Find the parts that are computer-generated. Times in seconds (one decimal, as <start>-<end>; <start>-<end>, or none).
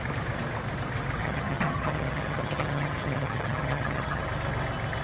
1.2-4.2